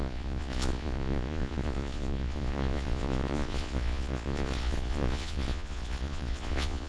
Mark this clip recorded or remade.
remade